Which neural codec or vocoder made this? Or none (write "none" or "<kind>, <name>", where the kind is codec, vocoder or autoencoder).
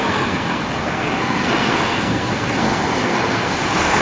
codec, SNAC